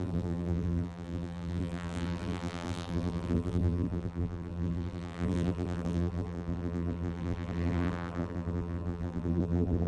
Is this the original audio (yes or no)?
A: no